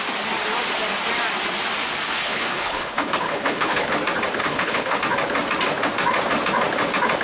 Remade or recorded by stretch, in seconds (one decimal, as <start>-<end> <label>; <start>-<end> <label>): 0.0-2.2 recorded; 2.2-3.9 remade; 3.9-4.4 recorded; 4.4-5.0 remade; 5.0-7.2 recorded